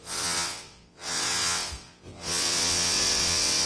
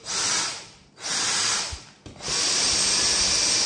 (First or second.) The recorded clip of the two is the second